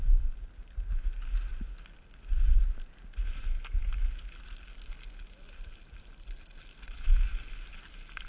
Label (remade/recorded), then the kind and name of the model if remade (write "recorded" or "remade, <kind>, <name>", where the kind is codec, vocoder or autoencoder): recorded